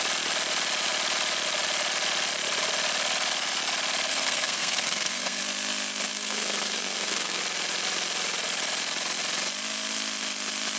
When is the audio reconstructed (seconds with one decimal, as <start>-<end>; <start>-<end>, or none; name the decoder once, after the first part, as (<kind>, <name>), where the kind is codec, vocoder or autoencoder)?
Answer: 4.1-5.4 (codec, SNAC); 6.1-7.4